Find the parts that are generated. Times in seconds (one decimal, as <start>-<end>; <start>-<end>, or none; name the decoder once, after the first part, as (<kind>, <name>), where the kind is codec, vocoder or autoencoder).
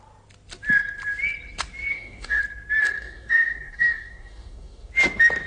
1.9-2.4 (codec, DAC); 2.8-4.9